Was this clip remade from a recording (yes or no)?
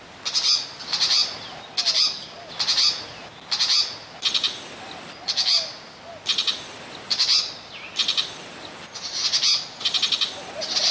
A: no